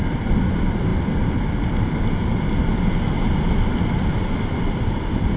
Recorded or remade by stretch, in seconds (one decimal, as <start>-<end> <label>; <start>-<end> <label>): 0.0-5.4 recorded

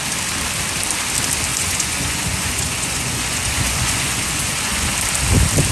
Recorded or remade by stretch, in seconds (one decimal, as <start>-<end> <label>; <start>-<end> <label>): 0.0-1.5 recorded; 1.5-4.9 remade; 4.9-5.7 recorded

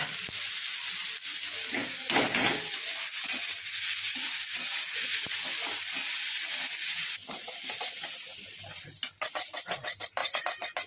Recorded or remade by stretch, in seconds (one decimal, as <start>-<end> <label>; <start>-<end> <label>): 0.0-10.9 recorded

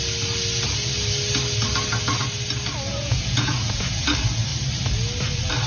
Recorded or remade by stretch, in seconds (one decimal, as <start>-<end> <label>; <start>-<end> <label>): 0.0-2.9 recorded; 2.9-3.9 remade; 3.9-5.7 recorded

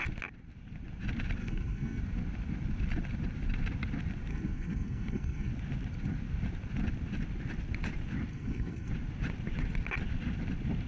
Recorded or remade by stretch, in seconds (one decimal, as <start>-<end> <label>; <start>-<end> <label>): 0.0-1.4 recorded; 1.4-2.0 remade; 2.0-4.3 recorded; 4.3-5.5 remade; 5.5-8.3 recorded; 8.3-8.9 remade; 8.9-10.9 recorded